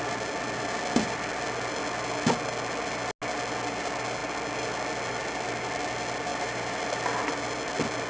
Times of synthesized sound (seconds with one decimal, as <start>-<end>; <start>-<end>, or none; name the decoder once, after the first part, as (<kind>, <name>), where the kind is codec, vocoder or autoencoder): 6.3-7.3 (vocoder, BigVGAN v2)